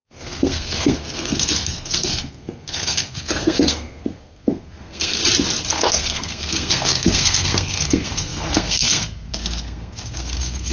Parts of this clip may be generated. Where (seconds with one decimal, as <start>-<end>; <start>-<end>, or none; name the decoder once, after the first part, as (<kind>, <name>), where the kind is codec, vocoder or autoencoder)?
0.0-5.2 (codec, SNAC); 5.7-10.7